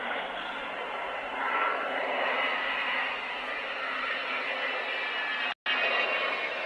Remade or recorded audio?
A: recorded